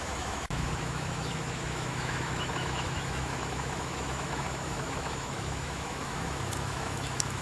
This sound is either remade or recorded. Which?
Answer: remade